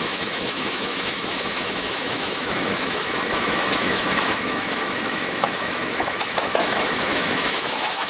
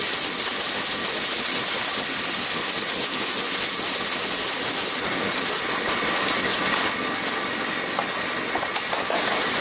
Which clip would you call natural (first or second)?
second